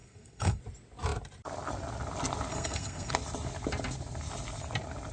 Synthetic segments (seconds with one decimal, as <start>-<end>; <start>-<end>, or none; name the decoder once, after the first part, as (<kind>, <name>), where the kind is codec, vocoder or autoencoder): 0.0-0.6 (codec, SNAC); 2.5-3.1

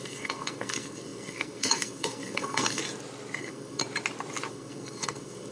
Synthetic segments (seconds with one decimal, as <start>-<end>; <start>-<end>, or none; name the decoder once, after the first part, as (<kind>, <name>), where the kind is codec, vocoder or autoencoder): 0.0-2.8 (codec, SNAC); 3.4-3.8; 4.5-5.5

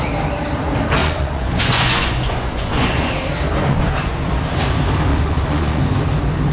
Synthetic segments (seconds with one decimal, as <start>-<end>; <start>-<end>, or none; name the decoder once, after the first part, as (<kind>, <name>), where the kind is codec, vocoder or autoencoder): 1.0-3.1 (vocoder, Vocos); 3.7-4.3; 5.1-5.8

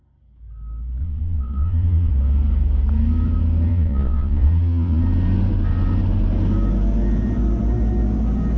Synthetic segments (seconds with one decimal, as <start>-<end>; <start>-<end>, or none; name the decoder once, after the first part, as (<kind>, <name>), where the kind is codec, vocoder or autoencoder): 1.0-2.1 (vocoder, Vocos); 3.7-5.0

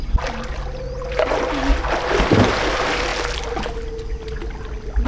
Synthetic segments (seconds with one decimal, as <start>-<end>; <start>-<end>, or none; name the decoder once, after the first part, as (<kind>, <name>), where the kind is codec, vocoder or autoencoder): none